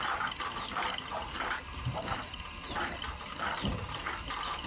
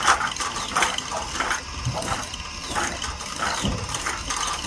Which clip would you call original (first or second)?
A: second